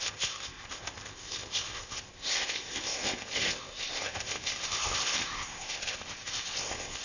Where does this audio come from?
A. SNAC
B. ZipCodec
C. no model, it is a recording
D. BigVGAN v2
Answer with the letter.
B